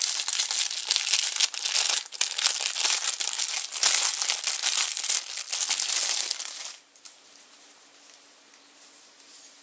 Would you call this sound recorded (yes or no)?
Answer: yes